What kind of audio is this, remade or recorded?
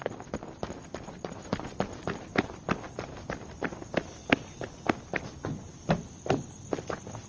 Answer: remade